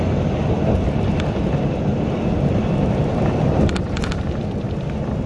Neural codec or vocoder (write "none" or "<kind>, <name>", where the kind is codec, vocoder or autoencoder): none